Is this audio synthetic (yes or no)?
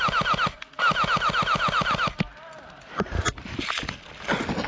no